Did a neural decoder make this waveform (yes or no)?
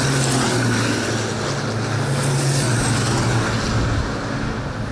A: no